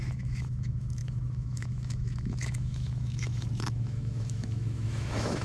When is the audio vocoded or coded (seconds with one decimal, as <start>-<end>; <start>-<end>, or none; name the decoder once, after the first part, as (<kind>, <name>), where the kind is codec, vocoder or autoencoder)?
0.0-5.4 (autoencoder, DAC-VAE)

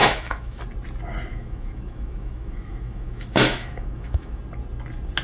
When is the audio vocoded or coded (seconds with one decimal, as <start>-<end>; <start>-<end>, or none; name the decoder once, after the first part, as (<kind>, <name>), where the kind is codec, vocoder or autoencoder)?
0.0-0.6 (autoencoder, DAC-VAE); 1.3-4.4

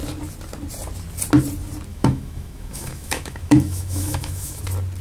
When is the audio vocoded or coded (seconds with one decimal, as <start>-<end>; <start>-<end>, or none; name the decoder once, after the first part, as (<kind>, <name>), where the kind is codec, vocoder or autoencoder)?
1.9-4.6 (autoencoder, DAC-VAE)

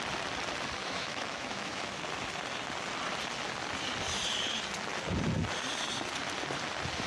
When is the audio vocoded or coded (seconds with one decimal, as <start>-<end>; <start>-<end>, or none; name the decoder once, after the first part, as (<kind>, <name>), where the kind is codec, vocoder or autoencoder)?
0.8-2.0 (autoencoder, DAC-VAE)

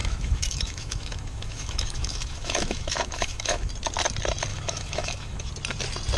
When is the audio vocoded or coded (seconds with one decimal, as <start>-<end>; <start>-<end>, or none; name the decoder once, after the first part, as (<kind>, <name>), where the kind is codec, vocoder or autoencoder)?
0.0-3.7 (autoencoder, DAC-VAE); 4.5-5.5

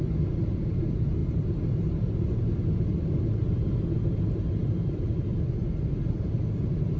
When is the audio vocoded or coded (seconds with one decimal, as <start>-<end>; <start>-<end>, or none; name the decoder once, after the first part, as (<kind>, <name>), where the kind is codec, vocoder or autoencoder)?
none

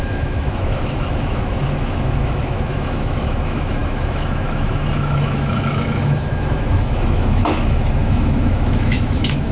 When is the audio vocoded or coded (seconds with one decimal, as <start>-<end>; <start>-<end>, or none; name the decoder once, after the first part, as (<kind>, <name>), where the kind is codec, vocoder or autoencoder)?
0.0-9.5 (autoencoder, DAC-VAE)